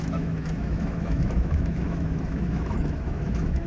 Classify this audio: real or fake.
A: fake